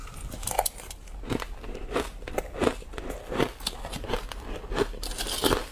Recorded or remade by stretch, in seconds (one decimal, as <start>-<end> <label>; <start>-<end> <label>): 0.0-5.7 recorded